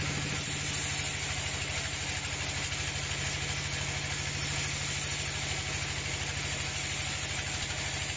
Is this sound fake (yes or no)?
no